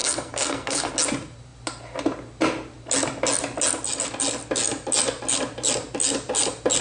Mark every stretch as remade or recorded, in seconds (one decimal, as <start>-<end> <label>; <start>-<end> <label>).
0.0-0.9 remade; 0.9-6.8 recorded